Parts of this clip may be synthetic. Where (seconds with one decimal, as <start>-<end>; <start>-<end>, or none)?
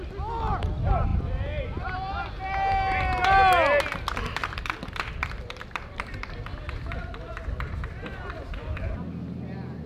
4.4-8.0